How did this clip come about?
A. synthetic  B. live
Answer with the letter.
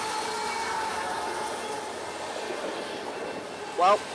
B